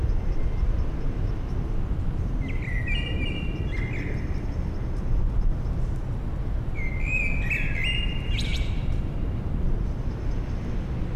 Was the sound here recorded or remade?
recorded